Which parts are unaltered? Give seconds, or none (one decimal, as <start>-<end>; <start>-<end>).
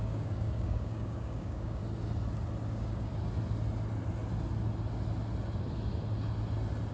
1.8-2.7; 3.1-6.9